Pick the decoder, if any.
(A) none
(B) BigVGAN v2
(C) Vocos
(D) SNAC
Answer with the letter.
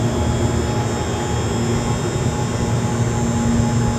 A